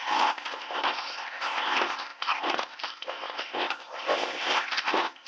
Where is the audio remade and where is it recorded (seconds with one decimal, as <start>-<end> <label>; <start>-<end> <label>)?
0.0-5.3 remade